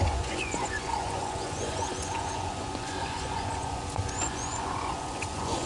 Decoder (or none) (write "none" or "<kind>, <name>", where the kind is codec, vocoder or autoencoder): vocoder, Vocos